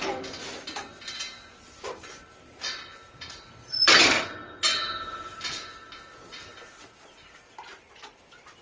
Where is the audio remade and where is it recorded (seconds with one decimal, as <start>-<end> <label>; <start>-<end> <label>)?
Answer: 0.0-8.6 recorded